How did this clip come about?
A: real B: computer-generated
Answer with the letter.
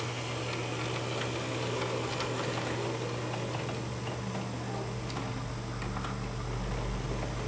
A